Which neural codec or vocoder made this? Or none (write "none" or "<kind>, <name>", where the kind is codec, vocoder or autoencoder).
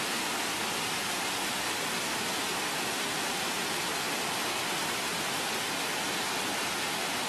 none